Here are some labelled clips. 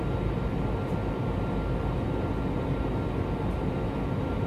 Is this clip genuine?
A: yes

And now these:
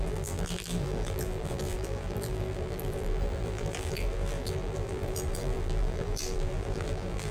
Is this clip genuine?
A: no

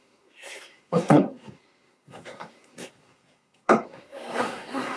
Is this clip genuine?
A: no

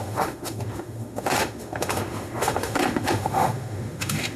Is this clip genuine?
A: no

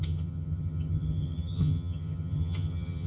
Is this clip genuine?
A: no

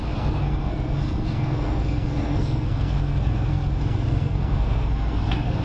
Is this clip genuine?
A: no